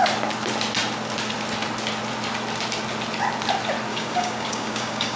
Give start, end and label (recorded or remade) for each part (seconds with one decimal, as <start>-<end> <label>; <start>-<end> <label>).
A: 0.0-3.9 recorded; 3.9-5.2 remade

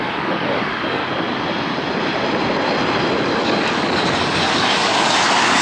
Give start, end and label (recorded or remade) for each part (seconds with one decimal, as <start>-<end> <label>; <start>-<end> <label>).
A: 0.0-1.0 remade; 1.0-3.4 recorded; 3.4-5.6 remade

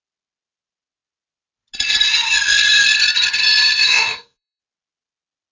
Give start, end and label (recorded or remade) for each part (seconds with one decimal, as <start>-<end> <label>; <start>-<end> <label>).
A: 0.0-3.8 recorded; 3.8-4.6 remade; 4.6-5.5 recorded

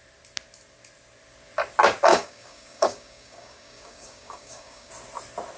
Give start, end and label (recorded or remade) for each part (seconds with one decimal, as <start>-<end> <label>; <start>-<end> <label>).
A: 0.0-2.1 recorded; 2.1-4.9 remade; 4.9-5.6 recorded

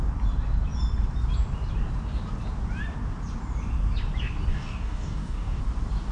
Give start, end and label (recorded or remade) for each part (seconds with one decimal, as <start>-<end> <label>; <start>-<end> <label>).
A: 0.0-4.5 recorded; 4.5-5.6 remade; 5.6-6.1 recorded

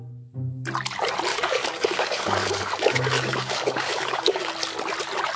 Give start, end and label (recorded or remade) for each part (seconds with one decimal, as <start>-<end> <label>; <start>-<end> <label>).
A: 0.0-1.3 recorded; 1.3-4.5 remade; 4.5-5.4 recorded

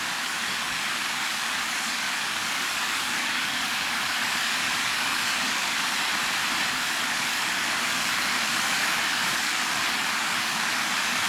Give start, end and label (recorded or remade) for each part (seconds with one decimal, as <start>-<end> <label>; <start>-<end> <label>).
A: 0.0-6.1 remade; 6.1-6.7 recorded; 6.7-11.3 remade

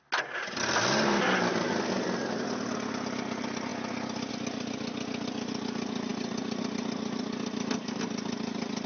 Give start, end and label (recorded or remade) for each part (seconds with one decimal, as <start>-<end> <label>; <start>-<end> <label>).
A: 0.0-8.9 recorded